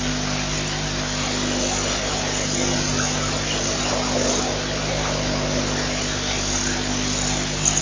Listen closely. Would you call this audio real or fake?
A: real